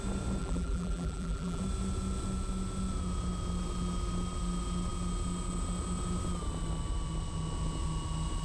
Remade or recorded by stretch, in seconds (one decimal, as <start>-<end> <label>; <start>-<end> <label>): 0.0-0.4 recorded; 0.4-1.6 remade; 1.6-8.4 recorded